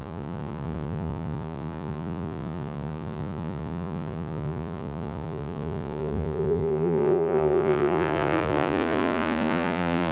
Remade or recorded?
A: remade